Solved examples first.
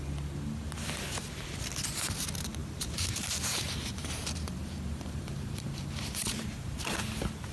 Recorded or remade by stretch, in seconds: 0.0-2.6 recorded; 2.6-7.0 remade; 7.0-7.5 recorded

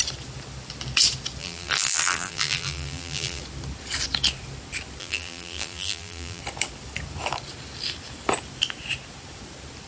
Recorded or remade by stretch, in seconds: 0.0-1.4 recorded; 1.4-3.4 remade; 3.4-5.0 recorded; 5.0-6.4 remade; 6.4-9.9 recorded

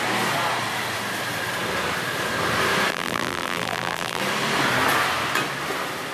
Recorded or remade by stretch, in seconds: 0.0-2.9 recorded; 2.9-4.2 remade; 4.2-6.1 recorded

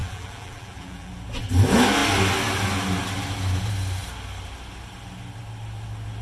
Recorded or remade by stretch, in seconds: 0.0-1.1 remade; 1.1-6.2 recorded

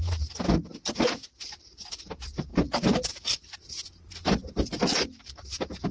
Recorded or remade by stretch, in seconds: 0.0-1.4 recorded; 1.4-2.5 remade; 2.5-4.4 recorded; 4.4-5.9 remade